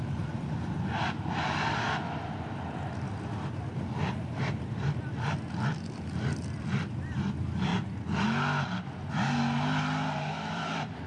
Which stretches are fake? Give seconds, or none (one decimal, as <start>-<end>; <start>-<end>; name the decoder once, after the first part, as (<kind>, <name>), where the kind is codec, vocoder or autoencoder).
0.0-7.7 (vocoder, BigVGAN v2); 10.5-11.1